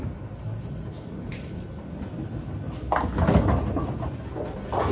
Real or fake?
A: real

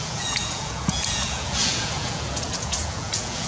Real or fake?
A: fake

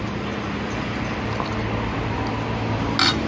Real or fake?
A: real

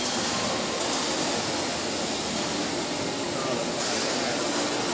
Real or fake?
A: real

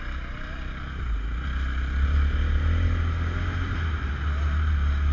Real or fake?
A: real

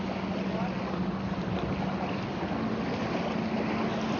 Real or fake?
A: real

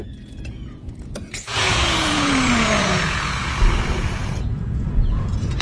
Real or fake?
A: fake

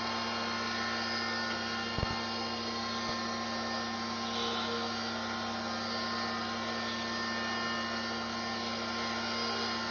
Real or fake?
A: real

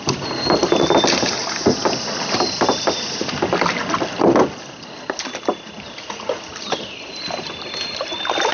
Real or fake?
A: real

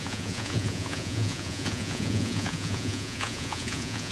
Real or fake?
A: fake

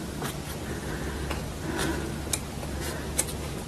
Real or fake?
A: real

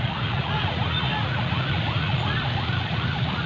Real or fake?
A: fake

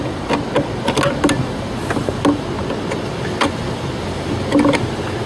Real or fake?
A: real